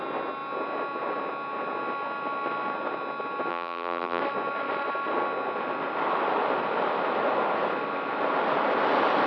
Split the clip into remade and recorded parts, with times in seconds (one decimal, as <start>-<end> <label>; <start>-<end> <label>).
0.0-3.5 recorded; 3.5-4.2 remade; 4.2-9.3 recorded